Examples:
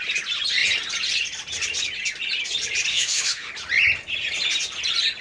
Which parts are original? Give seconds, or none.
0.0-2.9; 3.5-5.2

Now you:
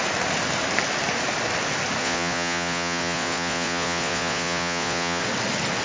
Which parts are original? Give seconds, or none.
0.0-2.0; 5.2-5.8

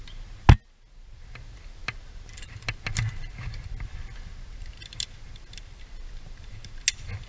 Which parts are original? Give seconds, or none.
0.0-7.3

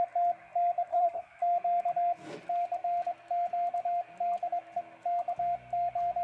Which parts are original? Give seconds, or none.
0.0-0.9; 1.4-6.2

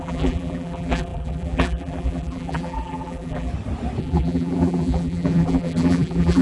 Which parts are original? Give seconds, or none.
3.5-4.0